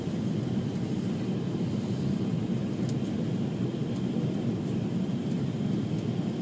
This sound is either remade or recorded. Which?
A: recorded